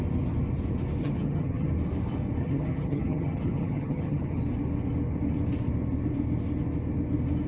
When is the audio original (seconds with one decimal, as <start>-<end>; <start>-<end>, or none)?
0.0-1.0; 1.7-2.4; 4.4-7.5